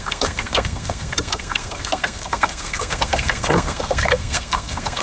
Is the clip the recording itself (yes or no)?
no